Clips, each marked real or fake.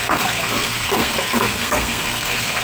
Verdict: fake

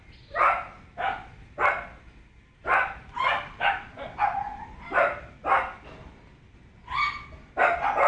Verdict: real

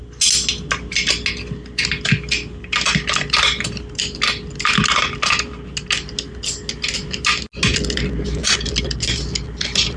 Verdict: real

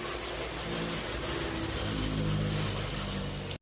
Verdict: real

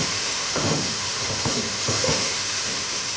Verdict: fake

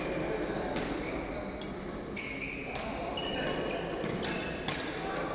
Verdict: real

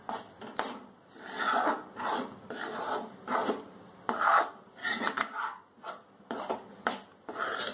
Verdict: real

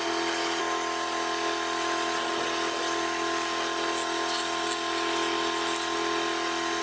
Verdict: real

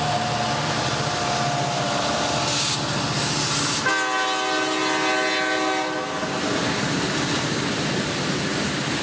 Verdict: real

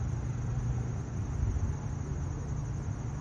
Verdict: real